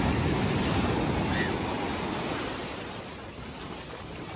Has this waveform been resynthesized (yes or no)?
no